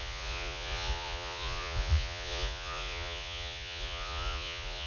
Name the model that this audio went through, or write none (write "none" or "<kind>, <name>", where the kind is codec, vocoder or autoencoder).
vocoder, Vocos